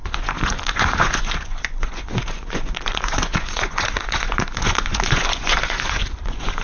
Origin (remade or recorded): remade